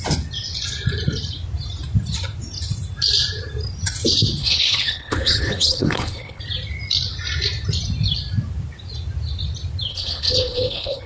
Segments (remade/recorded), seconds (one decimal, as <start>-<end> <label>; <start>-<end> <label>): 0.0-4.4 recorded; 4.4-6.4 remade; 6.4-9.9 recorded; 9.9-11.1 remade